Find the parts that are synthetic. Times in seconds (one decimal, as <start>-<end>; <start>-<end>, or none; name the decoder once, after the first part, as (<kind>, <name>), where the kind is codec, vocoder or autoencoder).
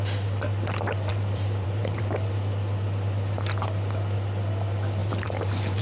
1.1-2.0 (vocoder, BigVGAN v2); 5.0-5.8